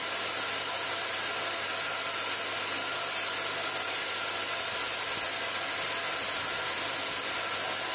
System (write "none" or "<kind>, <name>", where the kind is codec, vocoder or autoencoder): none